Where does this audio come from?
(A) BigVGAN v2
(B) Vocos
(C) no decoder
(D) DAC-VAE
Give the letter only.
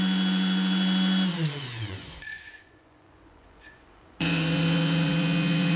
B